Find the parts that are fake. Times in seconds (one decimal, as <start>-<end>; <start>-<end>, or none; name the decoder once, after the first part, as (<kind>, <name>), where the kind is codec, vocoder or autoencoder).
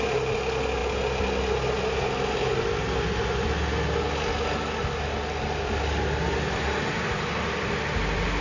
none